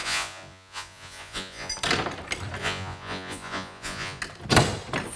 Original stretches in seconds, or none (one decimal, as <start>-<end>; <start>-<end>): 1.7-2.6; 4.2-5.2